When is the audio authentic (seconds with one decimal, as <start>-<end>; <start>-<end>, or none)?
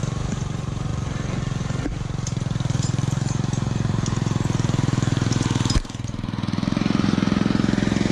0.9-1.6